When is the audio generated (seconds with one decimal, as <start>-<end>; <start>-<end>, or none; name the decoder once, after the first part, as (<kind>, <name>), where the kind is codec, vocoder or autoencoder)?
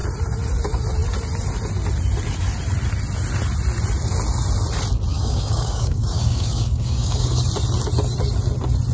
5.1-7.5 (codec, DAC)